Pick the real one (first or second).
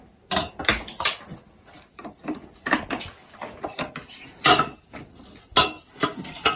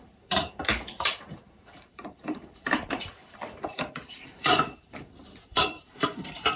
first